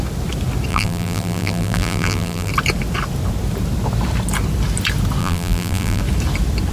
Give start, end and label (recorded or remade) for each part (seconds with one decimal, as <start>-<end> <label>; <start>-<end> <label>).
0.0-0.7 recorded; 0.7-2.5 remade; 2.5-5.2 recorded; 5.2-6.0 remade; 6.0-6.7 recorded